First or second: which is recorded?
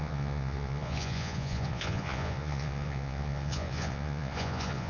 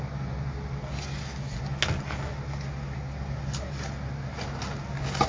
second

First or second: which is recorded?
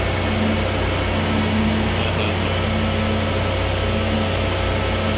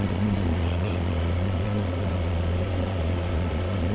first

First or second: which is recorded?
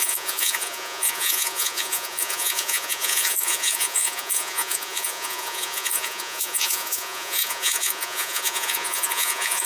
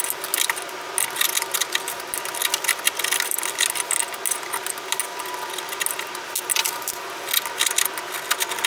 second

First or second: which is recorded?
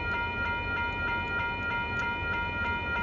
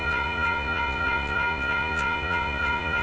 first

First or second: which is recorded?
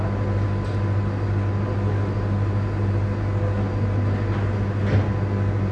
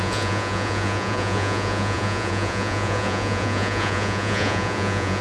first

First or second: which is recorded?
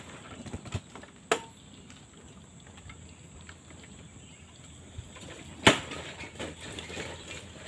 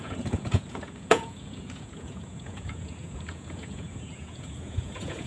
first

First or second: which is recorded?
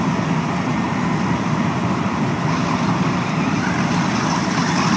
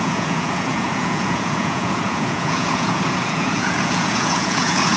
first